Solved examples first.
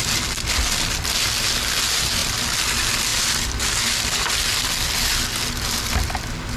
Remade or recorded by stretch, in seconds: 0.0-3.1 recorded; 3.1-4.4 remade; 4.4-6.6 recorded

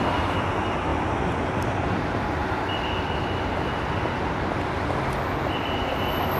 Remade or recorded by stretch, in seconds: 0.0-6.4 recorded

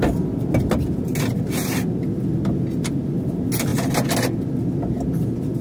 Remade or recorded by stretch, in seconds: 0.0-5.6 recorded

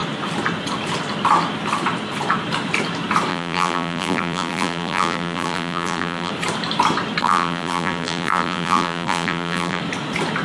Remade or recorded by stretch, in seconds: 0.0-3.3 recorded; 3.3-6.3 remade; 6.3-7.2 recorded; 7.2-9.8 remade; 9.8-10.4 recorded

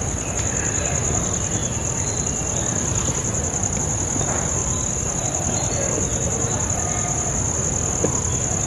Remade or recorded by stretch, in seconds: 0.0-1.6 recorded; 1.6-3.8 remade; 3.8-4.6 recorded; 4.6-5.2 remade; 5.2-8.7 recorded